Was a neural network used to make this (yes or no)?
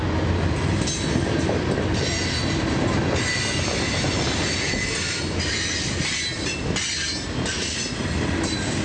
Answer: no